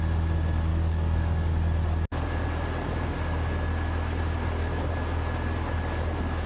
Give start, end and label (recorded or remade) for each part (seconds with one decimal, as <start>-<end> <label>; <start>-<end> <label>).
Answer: 0.0-0.7 recorded; 0.7-1.5 remade; 1.5-6.5 recorded